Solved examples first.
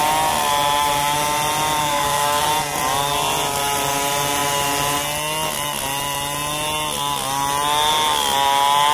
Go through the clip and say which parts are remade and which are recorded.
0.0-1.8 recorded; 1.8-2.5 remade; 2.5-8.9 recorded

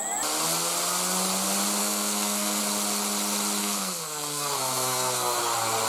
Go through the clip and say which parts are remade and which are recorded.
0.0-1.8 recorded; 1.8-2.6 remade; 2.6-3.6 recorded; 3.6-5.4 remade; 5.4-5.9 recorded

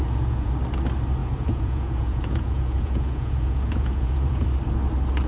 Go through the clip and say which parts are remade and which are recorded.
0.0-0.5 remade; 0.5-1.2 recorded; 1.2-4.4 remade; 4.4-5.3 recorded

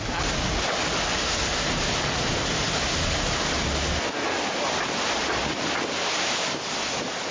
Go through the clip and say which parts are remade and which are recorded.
0.0-7.3 recorded

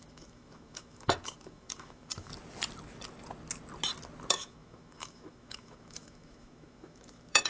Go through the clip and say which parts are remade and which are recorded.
0.0-2.3 remade; 2.3-4.3 recorded; 4.3-7.5 remade

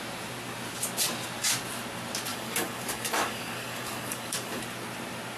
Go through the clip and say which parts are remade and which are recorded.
0.0-2.3 recorded; 2.3-4.6 remade; 4.6-5.4 recorded